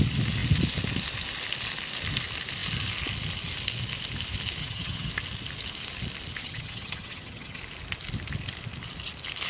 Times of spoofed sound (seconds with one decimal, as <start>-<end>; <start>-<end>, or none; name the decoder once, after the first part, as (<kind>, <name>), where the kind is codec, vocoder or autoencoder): 4.6-5.1 (vocoder, HiFi-GAN); 6.4-7.6